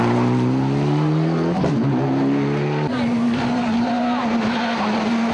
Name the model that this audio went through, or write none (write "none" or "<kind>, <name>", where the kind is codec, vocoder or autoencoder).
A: none